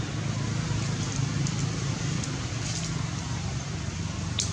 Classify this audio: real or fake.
real